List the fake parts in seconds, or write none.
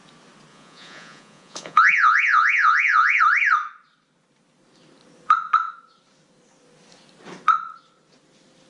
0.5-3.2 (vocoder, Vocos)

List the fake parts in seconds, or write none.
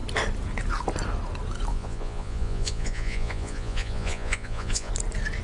1.7-4.9 (vocoder, Vocos)